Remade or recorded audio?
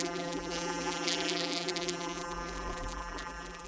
remade